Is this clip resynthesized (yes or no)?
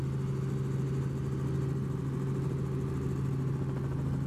no